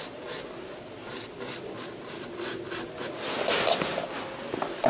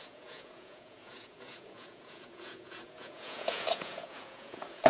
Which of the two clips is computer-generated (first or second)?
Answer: second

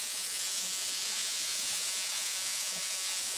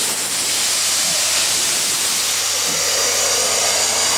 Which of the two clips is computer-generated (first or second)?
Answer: first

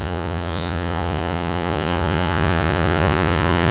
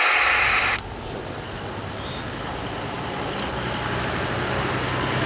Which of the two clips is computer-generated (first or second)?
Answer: first